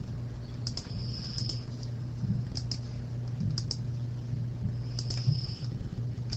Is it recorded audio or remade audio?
recorded